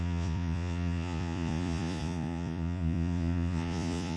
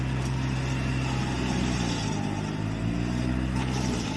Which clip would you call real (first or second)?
second